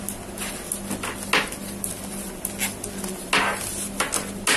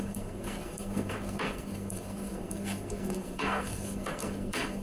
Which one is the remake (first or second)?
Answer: second